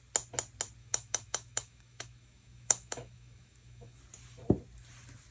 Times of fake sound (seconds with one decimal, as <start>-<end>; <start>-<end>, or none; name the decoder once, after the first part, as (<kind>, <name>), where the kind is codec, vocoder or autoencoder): 0.8-4.0 (autoencoder, DAC-VAE)